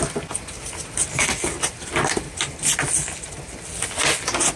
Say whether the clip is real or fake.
real